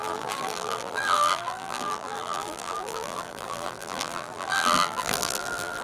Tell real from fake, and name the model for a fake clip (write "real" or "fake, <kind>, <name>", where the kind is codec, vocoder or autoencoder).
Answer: fake, vocoder, BigVGAN v2